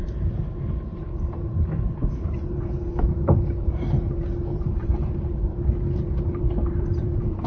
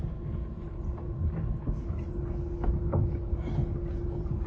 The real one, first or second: second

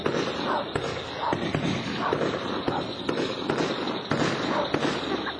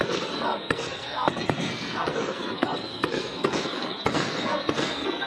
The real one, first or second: first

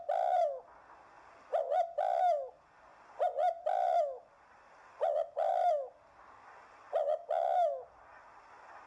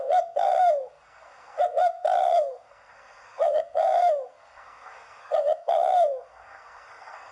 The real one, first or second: first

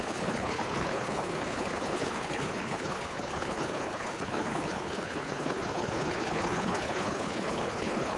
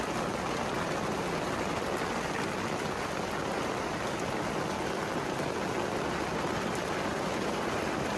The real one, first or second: second